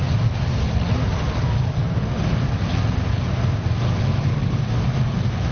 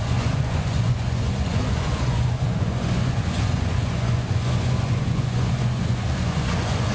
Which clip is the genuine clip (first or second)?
first